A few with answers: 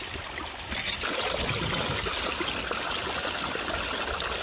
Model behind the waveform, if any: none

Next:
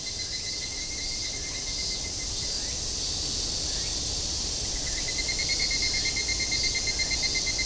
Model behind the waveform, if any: none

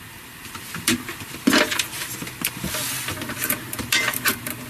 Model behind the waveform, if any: vocoder, BigVGAN v2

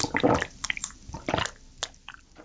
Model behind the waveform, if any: none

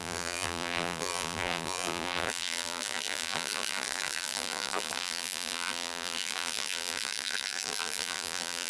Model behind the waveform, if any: vocoder, BigVGAN v2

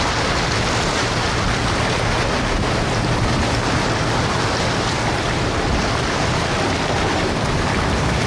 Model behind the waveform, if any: none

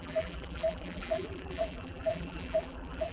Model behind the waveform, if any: vocoder, BigVGAN v2